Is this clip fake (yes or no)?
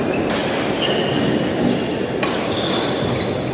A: no